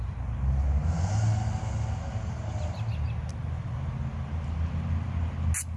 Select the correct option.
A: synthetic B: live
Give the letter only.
B